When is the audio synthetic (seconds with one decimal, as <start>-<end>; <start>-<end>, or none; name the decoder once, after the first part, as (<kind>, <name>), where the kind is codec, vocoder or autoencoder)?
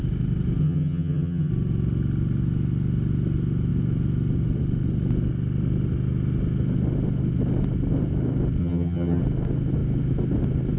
0.6-1.5 (vocoder, HiFi-GAN); 8.6-9.2